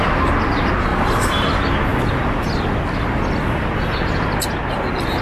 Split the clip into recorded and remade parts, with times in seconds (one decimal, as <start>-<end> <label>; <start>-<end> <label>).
0.0-0.9 recorded; 0.9-1.5 remade; 1.5-5.2 recorded